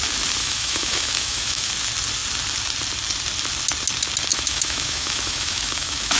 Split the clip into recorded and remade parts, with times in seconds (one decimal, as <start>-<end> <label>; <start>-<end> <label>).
0.0-0.4 recorded; 0.4-1.7 remade; 1.7-4.3 recorded; 4.3-6.2 remade